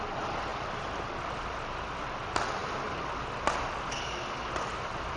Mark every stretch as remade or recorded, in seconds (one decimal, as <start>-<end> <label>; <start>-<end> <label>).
0.0-5.2 recorded